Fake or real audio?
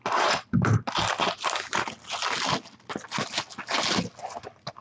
real